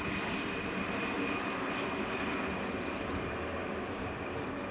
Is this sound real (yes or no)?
yes